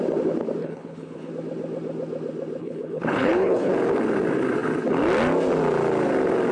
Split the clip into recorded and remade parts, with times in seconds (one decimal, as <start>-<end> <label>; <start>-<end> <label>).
0.0-0.6 recorded; 0.6-1.3 remade; 1.3-2.6 recorded; 2.6-3.7 remade; 3.7-6.5 recorded